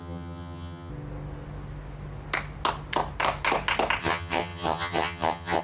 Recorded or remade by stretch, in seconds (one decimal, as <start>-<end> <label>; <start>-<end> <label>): 0.0-0.9 remade; 0.9-4.0 recorded; 4.0-5.6 remade